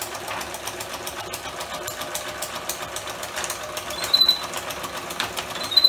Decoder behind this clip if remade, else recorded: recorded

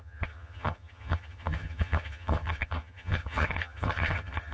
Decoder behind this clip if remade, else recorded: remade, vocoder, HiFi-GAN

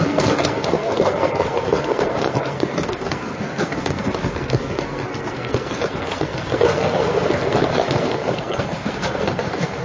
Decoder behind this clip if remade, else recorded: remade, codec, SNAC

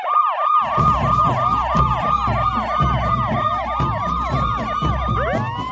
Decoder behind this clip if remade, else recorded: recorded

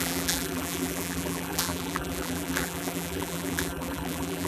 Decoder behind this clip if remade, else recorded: remade, vocoder, BigVGAN v2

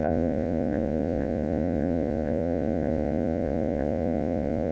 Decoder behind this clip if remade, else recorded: remade, vocoder, Vocos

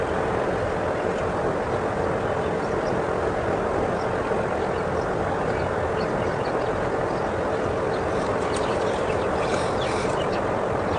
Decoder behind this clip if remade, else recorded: recorded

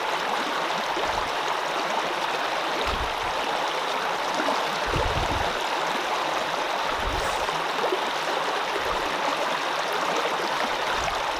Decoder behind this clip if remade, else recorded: recorded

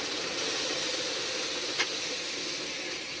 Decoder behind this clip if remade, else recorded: recorded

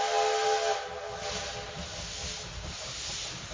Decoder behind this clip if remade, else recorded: recorded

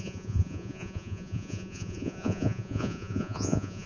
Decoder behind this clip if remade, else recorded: remade, vocoder, Vocos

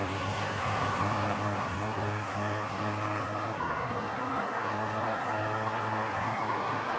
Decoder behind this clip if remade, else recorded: remade, codec, SNAC